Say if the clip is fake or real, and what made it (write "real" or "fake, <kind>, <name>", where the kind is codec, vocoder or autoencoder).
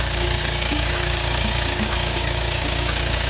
fake, codec, DAC